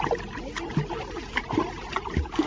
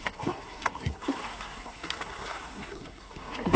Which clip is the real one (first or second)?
first